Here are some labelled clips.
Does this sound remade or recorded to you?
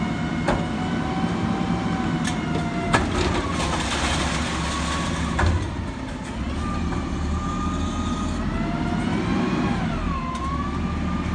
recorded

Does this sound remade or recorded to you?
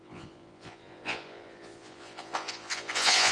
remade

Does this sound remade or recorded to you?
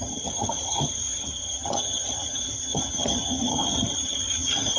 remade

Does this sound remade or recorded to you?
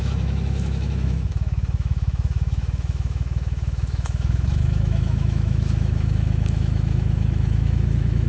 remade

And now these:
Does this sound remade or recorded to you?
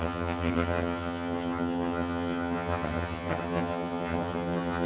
remade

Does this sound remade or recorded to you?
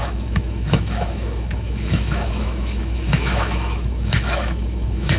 remade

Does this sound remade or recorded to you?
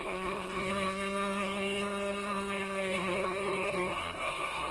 remade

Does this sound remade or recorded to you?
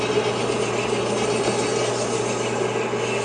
recorded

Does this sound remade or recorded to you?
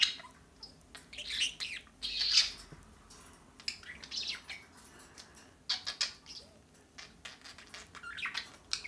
recorded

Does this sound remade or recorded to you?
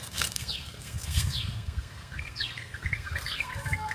remade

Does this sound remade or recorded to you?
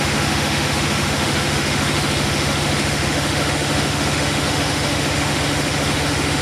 remade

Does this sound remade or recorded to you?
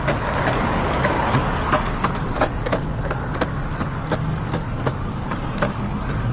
remade